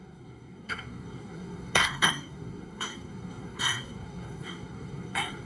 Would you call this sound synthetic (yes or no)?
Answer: yes